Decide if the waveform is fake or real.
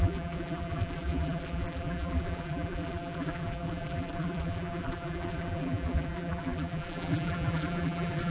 fake